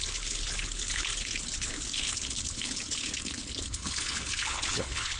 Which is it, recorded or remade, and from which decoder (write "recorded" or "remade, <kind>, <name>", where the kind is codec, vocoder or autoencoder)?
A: remade, codec, HILCodec